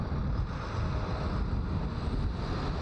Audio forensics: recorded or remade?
recorded